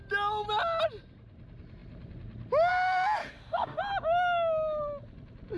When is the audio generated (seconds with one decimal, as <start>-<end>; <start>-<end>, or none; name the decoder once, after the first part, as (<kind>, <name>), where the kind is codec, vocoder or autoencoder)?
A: 3.2-3.8 (autoencoder, DAC-VAE)

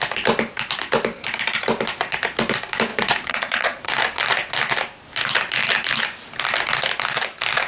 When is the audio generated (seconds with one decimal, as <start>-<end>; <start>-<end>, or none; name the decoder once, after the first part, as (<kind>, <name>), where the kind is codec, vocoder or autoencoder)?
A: 2.9-3.9 (vocoder, Vocos)